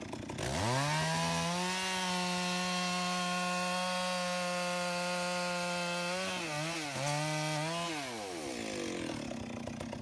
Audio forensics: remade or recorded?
recorded